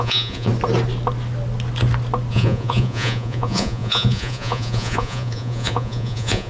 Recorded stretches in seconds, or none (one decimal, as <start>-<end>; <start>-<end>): 0.5-2.3